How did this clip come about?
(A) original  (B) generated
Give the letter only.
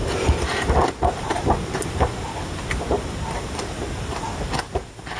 A